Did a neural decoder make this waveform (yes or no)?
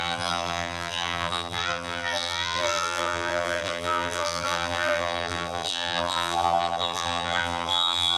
yes